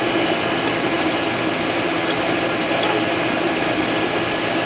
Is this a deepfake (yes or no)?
no